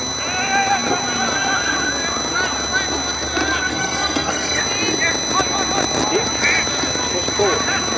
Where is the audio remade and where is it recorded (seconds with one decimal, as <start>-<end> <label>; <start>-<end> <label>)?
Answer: 0.0-3.7 recorded; 3.7-4.6 remade; 4.6-8.0 recorded